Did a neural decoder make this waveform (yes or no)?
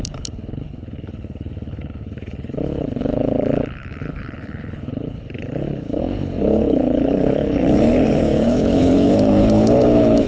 yes